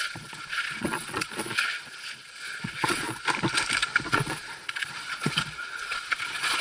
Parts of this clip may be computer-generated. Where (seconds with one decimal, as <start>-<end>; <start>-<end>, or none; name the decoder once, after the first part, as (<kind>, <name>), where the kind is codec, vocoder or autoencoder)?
0.0-3.2 (vocoder, Vocos); 4.1-6.6